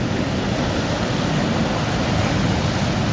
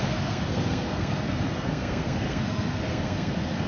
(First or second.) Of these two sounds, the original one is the first